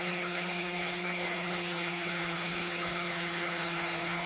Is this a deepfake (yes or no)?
yes